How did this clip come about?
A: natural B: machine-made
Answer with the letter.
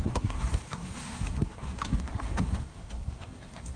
B